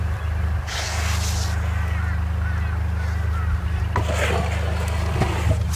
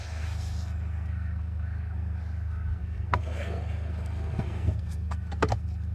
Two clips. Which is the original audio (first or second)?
first